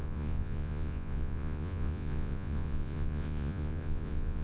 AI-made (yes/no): yes